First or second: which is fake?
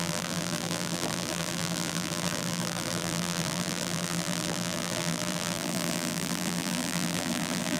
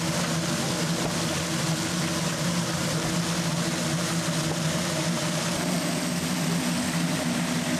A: first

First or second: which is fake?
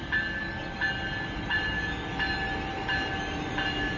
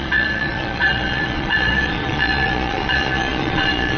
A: second